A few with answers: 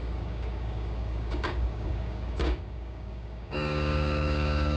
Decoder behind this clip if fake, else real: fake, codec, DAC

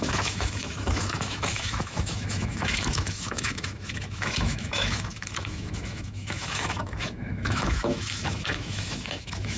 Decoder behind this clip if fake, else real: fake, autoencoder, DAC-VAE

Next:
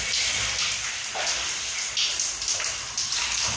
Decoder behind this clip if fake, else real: real